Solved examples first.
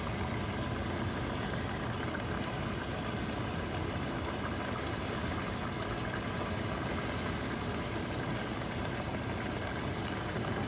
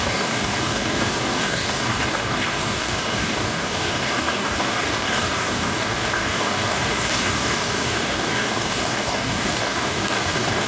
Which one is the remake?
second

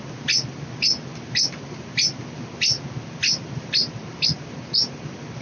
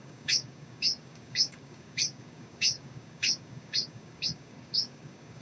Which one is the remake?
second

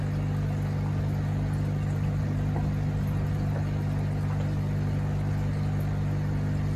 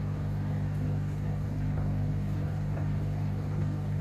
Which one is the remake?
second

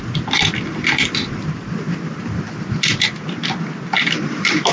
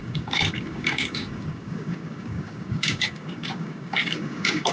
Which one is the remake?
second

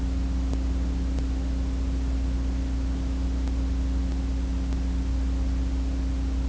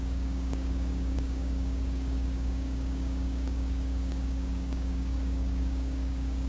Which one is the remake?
second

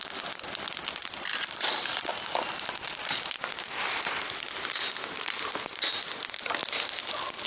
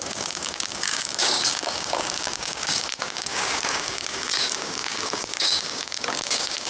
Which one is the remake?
second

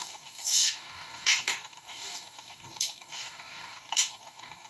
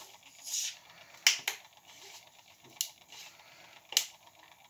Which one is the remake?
first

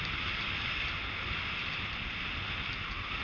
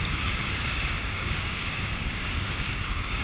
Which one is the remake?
second